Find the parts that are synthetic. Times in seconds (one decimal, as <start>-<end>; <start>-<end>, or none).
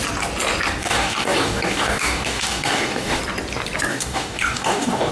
0.8-3.2; 3.9-5.1